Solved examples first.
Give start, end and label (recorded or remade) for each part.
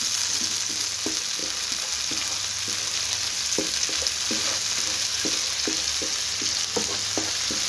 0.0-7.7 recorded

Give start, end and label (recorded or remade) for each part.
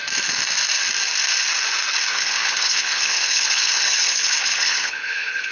0.0-2.1 recorded; 2.1-5.5 remade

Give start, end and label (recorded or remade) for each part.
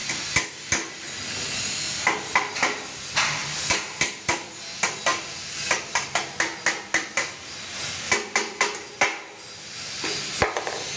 0.0-11.0 recorded